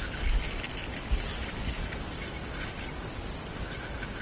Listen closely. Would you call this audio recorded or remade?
recorded